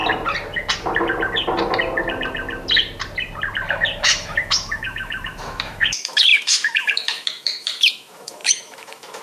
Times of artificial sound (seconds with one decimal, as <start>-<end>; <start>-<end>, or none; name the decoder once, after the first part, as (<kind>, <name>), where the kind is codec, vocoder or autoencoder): 4.0-9.2 (autoencoder, DAC-VAE)